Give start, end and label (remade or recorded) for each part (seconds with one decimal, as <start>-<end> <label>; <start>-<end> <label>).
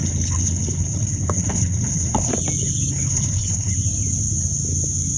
0.0-2.3 remade; 2.3-2.9 recorded; 2.9-3.7 remade; 3.7-5.2 recorded